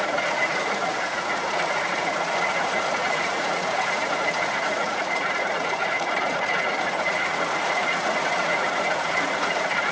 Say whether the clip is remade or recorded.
remade